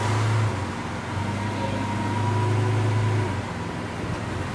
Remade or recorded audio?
recorded